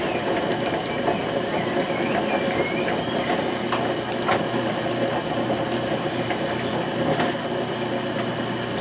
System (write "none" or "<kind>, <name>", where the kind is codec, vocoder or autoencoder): none